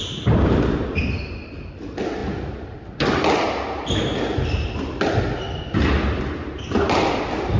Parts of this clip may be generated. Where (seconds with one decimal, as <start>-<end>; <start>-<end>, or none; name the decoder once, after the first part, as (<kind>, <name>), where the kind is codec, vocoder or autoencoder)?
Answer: none